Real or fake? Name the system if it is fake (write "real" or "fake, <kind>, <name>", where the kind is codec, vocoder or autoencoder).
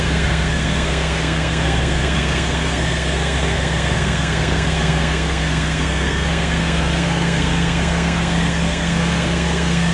fake, codec, SNAC